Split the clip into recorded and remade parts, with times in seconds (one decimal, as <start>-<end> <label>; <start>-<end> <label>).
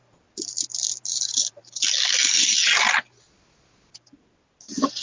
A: 0.0-2.4 remade; 2.4-5.0 recorded